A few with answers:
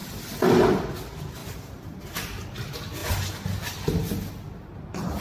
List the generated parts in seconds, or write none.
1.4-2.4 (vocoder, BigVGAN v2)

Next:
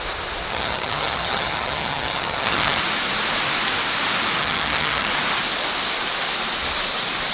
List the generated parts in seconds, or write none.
0.5-2.8 (vocoder, HiFi-GAN); 4.4-5.1